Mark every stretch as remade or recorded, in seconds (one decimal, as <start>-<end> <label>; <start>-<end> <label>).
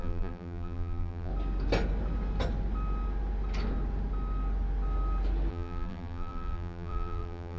0.0-1.3 remade; 1.3-5.5 recorded; 5.5-7.6 remade